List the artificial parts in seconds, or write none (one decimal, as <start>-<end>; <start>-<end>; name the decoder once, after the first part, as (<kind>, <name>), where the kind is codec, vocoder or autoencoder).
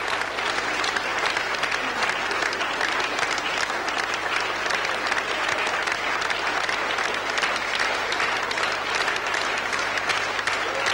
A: 8.0-9.8 (vocoder, BigVGAN v2)